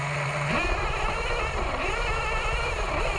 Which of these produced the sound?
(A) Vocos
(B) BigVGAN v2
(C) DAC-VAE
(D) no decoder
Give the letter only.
D